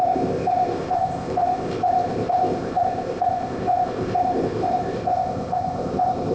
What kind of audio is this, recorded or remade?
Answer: remade